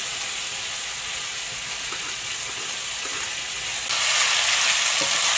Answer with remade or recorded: recorded